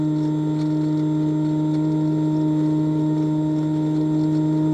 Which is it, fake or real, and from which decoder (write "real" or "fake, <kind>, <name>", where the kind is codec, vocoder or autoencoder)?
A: real